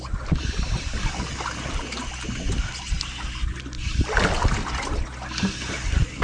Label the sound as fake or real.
real